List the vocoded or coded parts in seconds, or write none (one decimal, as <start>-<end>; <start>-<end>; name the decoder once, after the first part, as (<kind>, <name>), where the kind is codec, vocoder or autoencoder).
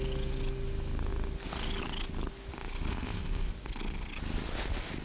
2.9-3.5 (codec, ZipCodec)